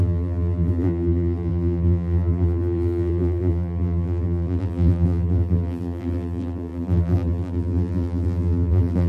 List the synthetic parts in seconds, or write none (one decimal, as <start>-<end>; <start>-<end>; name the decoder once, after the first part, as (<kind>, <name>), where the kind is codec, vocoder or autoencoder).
0.0-9.1 (vocoder, BigVGAN v2)